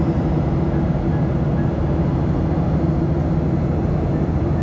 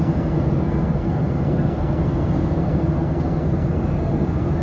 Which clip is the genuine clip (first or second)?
first